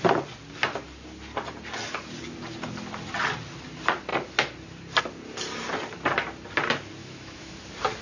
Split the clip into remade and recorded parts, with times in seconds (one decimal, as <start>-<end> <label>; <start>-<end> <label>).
0.0-7.0 recorded; 7.0-7.5 remade; 7.5-8.0 recorded